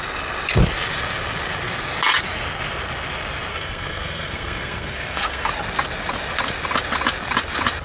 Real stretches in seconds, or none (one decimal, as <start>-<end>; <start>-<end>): 0.0-3.5; 5.5-7.8